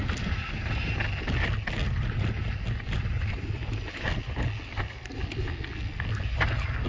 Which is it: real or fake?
real